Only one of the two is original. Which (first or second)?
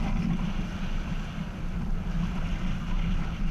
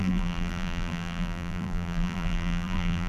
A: first